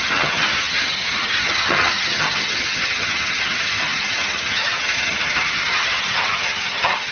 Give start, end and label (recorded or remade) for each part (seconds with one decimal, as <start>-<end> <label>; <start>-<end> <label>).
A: 0.0-7.1 remade